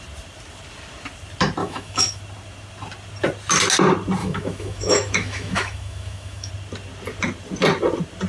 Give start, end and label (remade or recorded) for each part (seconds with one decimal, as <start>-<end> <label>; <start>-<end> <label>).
0.0-1.6 recorded; 1.6-2.2 remade; 2.2-4.2 recorded; 4.2-6.5 remade; 6.5-8.3 recorded